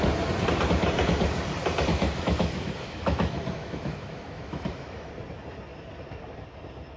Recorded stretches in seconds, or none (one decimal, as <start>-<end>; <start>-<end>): 0.0-1.9; 5.1-7.0